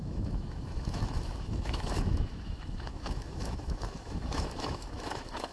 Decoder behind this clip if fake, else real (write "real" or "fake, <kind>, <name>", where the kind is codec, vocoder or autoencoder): fake, autoencoder, DAC-VAE